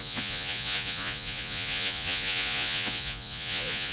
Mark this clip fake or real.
fake